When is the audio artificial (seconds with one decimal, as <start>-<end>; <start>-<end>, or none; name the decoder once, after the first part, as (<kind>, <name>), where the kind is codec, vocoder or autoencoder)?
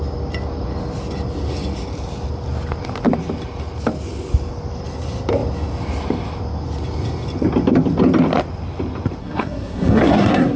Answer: 9.2-10.6 (codec, SNAC)